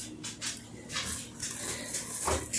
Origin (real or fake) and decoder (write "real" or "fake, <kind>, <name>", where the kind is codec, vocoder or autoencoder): real